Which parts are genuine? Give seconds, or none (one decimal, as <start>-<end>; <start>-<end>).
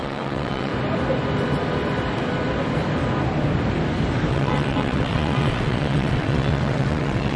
0.7-4.3